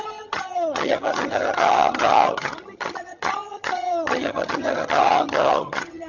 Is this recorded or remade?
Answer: remade